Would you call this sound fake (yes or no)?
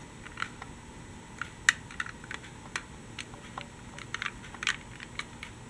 no